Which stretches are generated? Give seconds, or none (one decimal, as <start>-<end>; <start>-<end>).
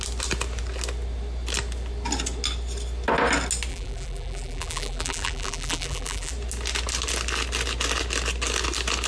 3.7-6.3